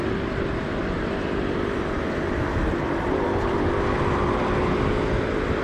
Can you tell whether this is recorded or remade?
recorded